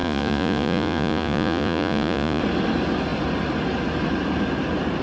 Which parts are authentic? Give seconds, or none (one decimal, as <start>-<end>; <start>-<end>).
2.4-5.0